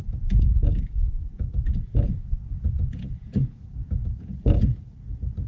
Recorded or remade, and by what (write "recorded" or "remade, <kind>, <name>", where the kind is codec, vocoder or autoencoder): remade, vocoder, Vocos